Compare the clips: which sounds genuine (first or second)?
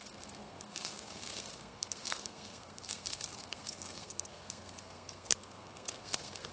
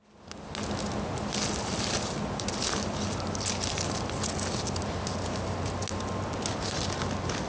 second